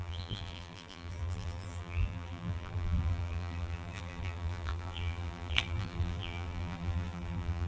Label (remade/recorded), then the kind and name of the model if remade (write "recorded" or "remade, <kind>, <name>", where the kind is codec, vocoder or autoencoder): remade, vocoder, BigVGAN v2